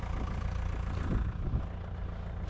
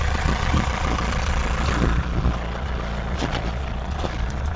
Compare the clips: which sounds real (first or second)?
first